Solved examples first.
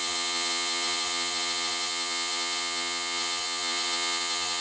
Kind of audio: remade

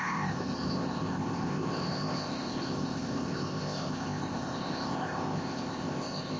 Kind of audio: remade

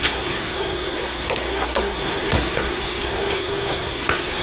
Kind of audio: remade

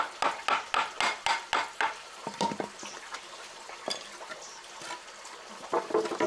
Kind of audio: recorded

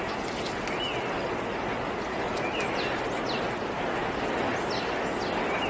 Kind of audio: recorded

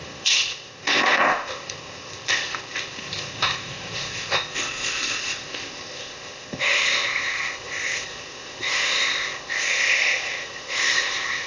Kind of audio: remade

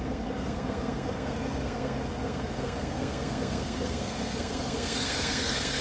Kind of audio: remade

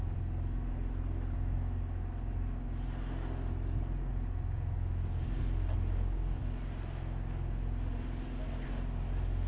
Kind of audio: recorded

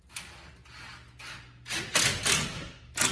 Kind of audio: recorded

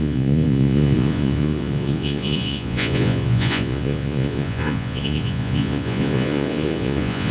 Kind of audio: remade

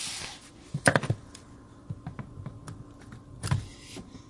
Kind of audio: remade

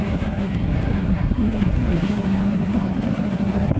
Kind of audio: remade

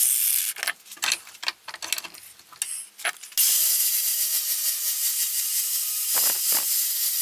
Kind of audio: recorded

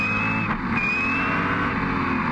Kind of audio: recorded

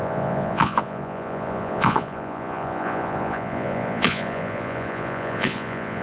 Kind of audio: remade